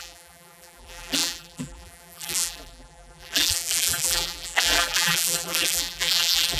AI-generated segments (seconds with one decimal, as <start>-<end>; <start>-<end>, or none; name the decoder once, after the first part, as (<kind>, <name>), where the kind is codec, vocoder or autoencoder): 0.0-6.6 (vocoder, BigVGAN v2)